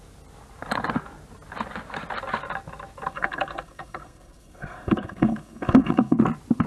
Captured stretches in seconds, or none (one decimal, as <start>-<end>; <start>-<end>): 0.0-3.1; 6.2-6.7